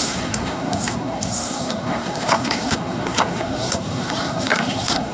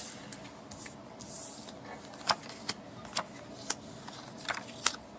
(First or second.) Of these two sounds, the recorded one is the second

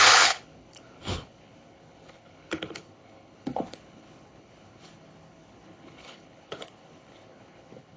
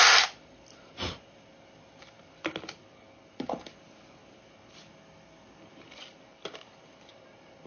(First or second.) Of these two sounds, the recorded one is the second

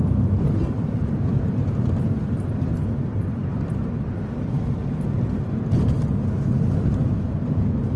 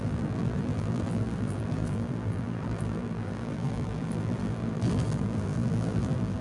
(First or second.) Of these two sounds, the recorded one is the first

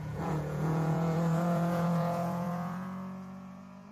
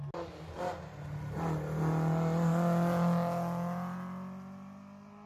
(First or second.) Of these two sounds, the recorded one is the second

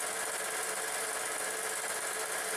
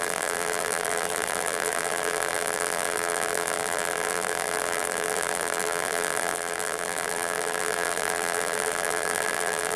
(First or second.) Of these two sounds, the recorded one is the first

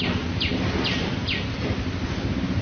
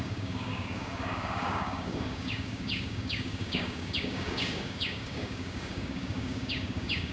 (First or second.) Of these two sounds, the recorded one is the first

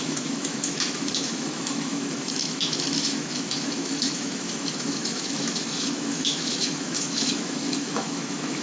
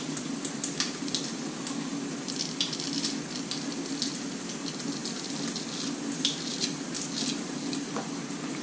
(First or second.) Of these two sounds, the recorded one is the second